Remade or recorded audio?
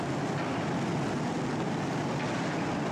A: recorded